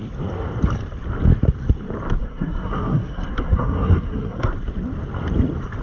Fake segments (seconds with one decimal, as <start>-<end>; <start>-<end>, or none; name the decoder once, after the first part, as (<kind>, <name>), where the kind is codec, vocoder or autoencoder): 2.2-4.5 (codec, SNAC)